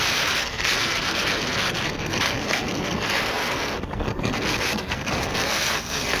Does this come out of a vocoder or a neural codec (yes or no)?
yes